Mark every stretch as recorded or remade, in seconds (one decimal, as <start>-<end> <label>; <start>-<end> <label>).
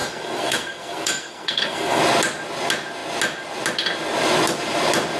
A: 0.0-2.0 remade; 2.0-5.2 recorded